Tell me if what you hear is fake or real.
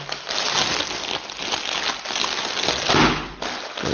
real